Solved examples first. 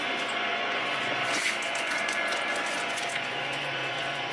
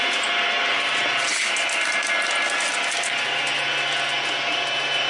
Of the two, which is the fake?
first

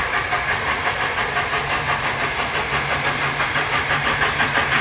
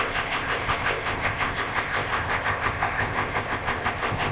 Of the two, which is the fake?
second